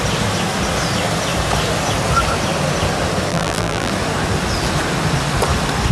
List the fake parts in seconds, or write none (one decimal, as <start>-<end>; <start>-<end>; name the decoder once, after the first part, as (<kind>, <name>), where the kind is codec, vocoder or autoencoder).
3.3-3.9 (vocoder, BigVGAN v2)